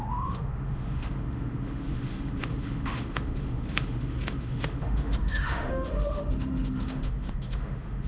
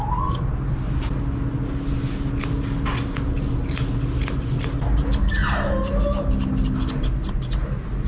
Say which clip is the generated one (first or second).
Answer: first